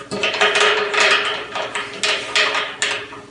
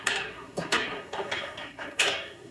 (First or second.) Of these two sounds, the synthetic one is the second